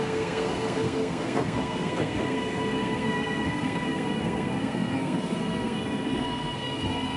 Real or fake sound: fake